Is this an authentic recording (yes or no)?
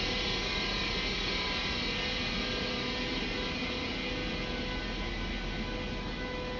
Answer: yes